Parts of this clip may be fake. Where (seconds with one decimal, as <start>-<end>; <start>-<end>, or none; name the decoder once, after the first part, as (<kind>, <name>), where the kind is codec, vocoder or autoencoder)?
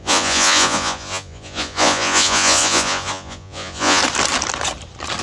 0.0-4.0 (vocoder, Vocos)